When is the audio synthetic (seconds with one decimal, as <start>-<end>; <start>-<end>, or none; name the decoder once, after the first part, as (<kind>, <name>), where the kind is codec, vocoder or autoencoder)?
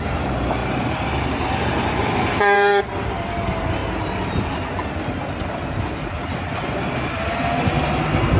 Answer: 0.0-3.8 (vocoder, BigVGAN v2)